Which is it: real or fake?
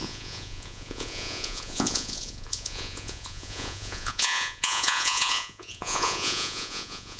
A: fake